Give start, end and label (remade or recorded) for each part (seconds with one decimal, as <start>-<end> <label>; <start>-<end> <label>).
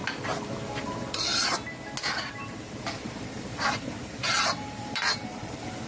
0.0-0.8 recorded; 0.8-1.3 remade; 1.3-2.3 recorded; 2.3-5.9 remade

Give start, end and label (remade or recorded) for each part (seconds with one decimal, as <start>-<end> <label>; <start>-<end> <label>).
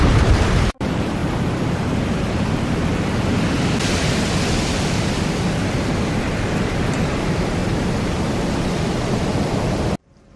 0.0-1.2 remade; 1.2-1.7 recorded; 1.7-2.8 remade; 2.8-6.2 recorded; 6.2-7.6 remade; 7.6-10.0 recorded; 10.0-10.4 remade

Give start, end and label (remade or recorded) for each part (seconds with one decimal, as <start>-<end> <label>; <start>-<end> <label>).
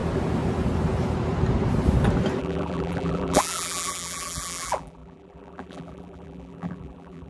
0.0-2.4 recorded; 2.4-7.3 remade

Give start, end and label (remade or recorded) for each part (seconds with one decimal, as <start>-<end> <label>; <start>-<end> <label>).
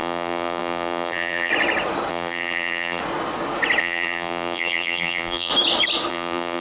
0.0-1.5 remade; 1.5-2.1 recorded; 2.1-3.0 remade; 3.0-3.8 recorded; 3.8-5.5 remade; 5.5-6.1 recorded; 6.1-6.6 remade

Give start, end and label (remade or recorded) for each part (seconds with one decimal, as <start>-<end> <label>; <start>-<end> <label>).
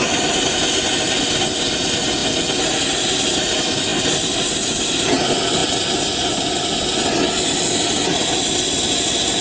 0.0-9.4 recorded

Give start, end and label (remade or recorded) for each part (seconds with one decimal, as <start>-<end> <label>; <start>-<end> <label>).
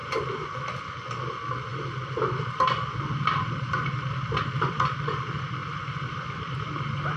0.0-1.7 recorded; 1.7-4.1 remade; 4.1-7.2 recorded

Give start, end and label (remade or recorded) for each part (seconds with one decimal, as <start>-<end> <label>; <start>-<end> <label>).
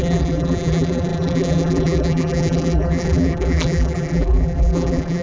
0.0-5.2 remade